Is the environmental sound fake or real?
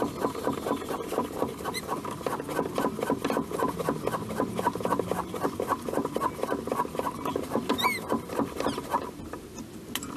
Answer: real